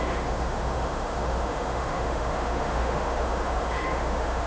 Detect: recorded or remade remade